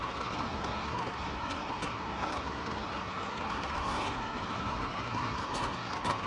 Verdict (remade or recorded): remade